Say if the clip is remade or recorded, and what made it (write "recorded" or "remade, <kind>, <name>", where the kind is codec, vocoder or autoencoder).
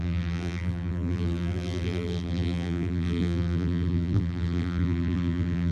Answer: remade, vocoder, BigVGAN v2